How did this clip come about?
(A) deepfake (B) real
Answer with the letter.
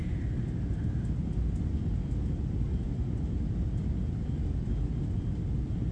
B